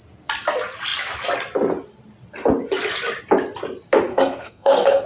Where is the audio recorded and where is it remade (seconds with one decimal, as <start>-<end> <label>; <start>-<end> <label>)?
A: 0.0-4.1 recorded; 4.1-5.1 remade